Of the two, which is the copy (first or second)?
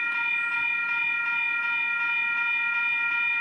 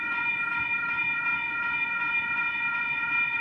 second